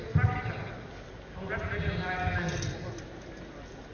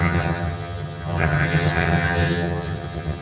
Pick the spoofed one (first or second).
second